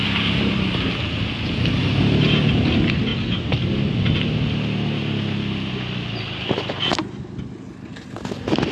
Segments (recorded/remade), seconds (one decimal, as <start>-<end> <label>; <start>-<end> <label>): 0.0-8.7 recorded